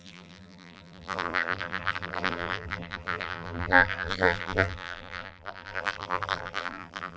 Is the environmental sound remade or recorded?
remade